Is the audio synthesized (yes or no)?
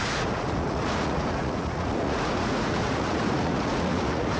yes